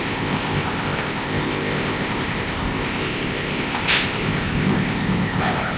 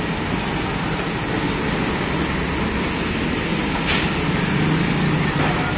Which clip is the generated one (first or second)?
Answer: first